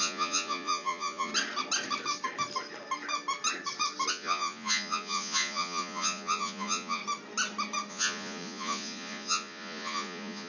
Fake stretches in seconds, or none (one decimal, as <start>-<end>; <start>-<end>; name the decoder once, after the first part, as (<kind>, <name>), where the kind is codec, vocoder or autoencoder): 0.0-1.3 (vocoder, Vocos); 4.1-7.0; 7.9-10.5